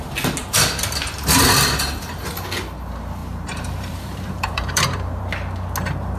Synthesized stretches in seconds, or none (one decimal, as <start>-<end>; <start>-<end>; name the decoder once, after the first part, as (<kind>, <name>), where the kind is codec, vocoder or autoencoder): 0.4-1.4 (vocoder, BigVGAN v2); 3.2-5.2

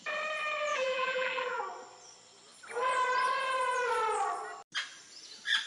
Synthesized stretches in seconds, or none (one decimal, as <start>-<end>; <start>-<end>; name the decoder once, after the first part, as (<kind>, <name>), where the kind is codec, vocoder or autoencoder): 0.7-1.6 (vocoder, BigVGAN v2)

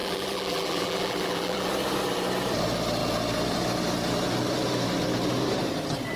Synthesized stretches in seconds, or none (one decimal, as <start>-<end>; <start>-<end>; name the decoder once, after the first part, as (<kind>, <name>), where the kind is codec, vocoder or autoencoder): 0.0-1.7 (vocoder, BigVGAN v2)

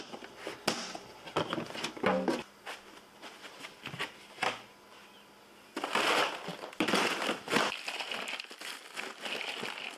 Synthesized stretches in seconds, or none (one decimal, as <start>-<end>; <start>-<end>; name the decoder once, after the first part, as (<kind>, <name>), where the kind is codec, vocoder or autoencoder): none

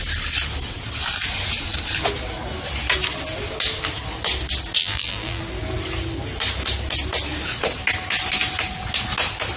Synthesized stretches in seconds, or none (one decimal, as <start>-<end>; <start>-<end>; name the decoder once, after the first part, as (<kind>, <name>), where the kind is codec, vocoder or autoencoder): 4.8-5.4 (vocoder, BigVGAN v2)

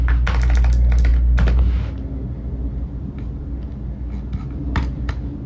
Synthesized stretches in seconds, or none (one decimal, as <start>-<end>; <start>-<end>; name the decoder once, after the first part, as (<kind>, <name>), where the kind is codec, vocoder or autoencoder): 2.6-3.4 (vocoder, BigVGAN v2); 4.4-5.1